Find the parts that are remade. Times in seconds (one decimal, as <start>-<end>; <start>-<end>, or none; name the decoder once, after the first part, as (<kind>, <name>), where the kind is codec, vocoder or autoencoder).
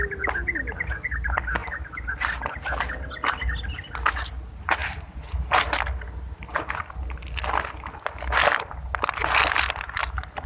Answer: none